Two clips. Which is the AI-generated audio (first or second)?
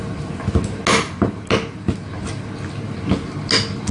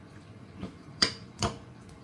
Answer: second